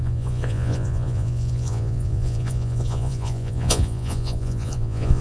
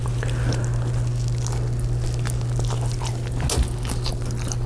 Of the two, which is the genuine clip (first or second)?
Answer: second